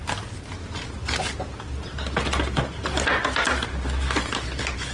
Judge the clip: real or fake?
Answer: real